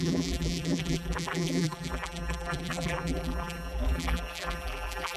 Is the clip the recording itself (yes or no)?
no